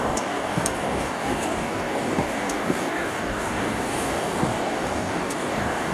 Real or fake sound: fake